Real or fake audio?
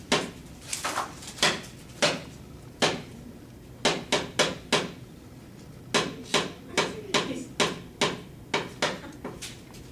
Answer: real